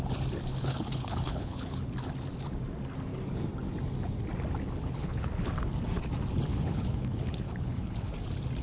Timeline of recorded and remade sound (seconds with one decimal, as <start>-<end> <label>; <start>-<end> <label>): 0.0-0.5 recorded; 0.5-1.9 remade; 1.9-4.8 recorded; 4.8-5.5 remade; 5.5-6.5 recorded; 6.5-8.1 remade; 8.1-8.6 recorded